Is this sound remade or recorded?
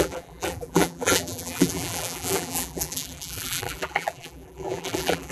remade